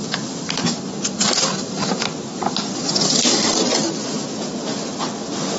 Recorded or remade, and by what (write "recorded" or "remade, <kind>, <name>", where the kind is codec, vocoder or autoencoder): recorded